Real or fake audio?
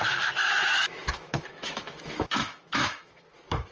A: fake